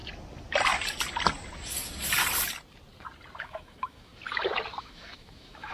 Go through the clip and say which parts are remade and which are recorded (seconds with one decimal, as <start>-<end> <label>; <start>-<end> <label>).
0.0-3.4 recorded; 3.4-4.1 remade; 4.1-4.8 recorded; 4.8-5.7 remade